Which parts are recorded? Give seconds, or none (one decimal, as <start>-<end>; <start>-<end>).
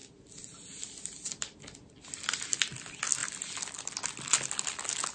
0.0-5.1